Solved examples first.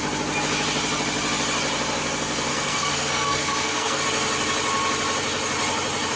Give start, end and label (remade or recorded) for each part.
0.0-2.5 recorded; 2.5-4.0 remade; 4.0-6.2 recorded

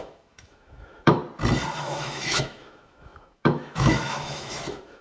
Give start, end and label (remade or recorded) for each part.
0.0-1.2 remade; 1.2-1.8 recorded; 1.8-5.0 remade

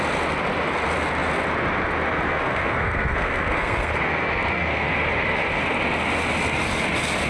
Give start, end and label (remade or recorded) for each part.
0.0-2.3 recorded; 2.3-4.9 remade; 4.9-7.3 recorded

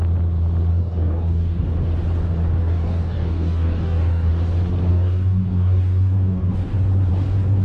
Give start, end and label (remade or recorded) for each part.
0.0-0.7 recorded; 0.7-1.7 remade; 1.7-2.6 recorded; 2.6-4.3 remade; 4.3-4.9 recorded; 4.9-6.5 remade; 6.5-7.6 recorded